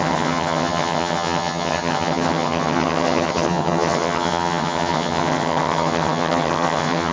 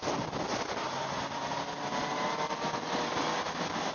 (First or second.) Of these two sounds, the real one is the second